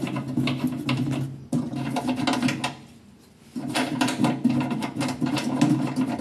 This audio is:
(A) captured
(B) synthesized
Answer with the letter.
A